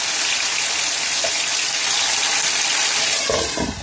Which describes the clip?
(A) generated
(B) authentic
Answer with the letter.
B